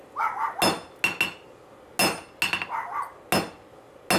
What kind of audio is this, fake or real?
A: real